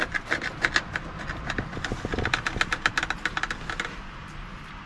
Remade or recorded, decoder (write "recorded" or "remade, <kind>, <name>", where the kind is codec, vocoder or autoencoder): recorded